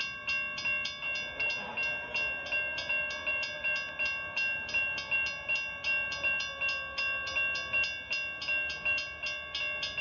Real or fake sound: real